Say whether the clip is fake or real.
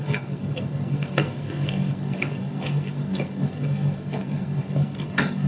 fake